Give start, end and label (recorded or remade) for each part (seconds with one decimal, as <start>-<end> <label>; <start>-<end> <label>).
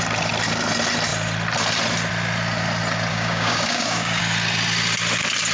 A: 0.0-3.1 recorded; 3.1-4.2 remade; 4.2-5.5 recorded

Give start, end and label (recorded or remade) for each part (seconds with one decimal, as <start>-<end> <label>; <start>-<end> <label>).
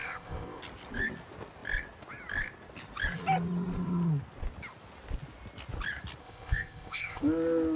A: 0.0-0.6 remade; 0.6-6.2 recorded; 6.2-7.2 remade; 7.2-7.8 recorded